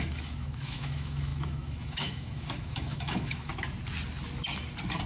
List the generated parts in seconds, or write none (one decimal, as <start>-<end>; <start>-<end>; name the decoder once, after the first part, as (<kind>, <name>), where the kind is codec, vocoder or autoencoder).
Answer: 0.0-3.5 (autoencoder, DAC-VAE)